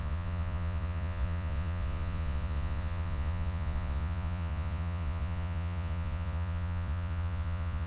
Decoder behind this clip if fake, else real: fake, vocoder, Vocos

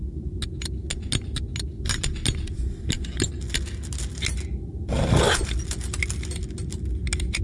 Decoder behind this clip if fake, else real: real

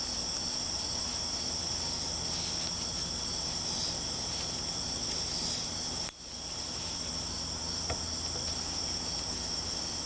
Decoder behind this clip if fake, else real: real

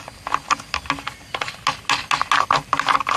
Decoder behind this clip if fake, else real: real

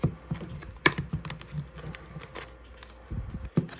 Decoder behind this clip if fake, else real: real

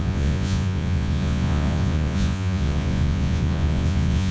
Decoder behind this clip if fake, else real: fake, vocoder, Vocos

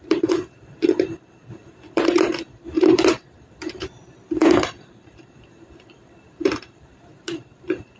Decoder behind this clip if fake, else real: fake, vocoder, BigVGAN v2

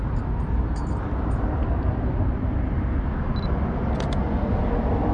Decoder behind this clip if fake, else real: real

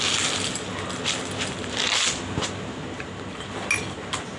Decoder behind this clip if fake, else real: real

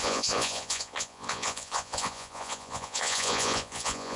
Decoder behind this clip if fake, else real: fake, vocoder, Vocos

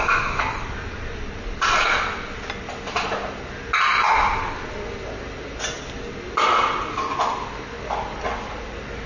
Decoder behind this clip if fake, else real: real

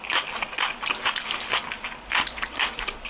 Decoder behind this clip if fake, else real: real